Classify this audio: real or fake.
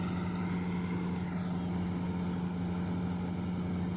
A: real